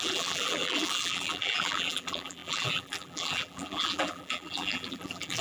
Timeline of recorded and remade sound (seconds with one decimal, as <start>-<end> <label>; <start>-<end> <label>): 0.0-5.4 remade